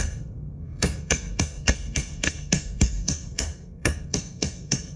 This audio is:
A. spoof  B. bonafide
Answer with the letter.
A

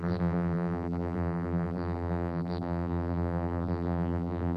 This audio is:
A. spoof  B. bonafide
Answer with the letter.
A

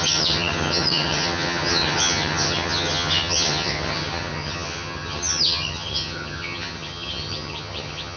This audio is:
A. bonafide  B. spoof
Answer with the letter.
B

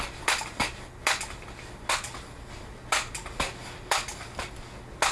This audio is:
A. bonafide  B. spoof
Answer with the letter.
A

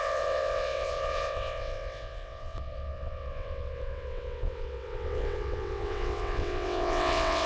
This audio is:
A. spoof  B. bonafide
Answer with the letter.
A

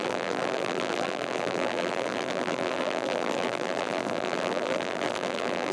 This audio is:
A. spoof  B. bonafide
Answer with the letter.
A